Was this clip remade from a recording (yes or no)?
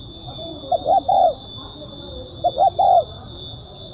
no